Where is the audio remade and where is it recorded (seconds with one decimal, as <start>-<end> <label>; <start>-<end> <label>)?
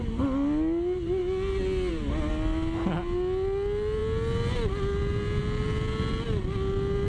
0.0-7.1 recorded